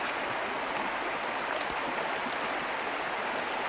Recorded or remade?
recorded